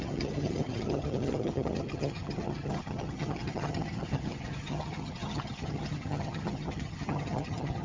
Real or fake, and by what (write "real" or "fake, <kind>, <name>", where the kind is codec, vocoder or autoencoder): fake, vocoder, HiFi-GAN